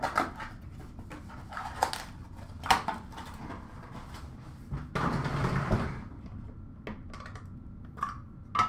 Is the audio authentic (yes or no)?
yes